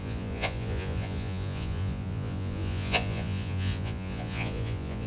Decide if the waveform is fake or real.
fake